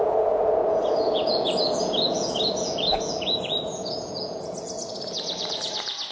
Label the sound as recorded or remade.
remade